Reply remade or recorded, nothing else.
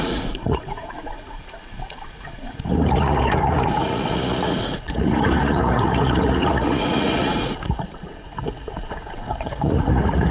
remade